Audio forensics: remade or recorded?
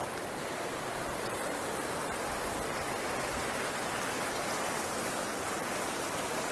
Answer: recorded